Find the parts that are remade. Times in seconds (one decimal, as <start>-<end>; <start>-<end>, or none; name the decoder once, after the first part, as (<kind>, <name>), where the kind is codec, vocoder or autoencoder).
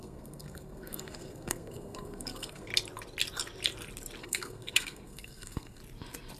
0.0-2.7 (codec, SNAC); 4.2-5.8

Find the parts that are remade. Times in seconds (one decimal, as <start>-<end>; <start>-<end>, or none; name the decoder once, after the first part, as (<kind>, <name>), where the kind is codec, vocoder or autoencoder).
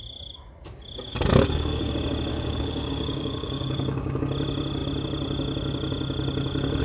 1.1-1.9 (codec, DAC); 2.3-4.2